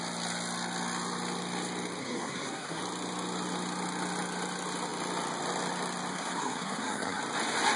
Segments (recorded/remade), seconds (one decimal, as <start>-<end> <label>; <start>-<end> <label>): 0.0-2.0 recorded; 2.0-2.8 remade; 2.8-6.1 recorded; 6.1-7.2 remade; 7.2-7.8 recorded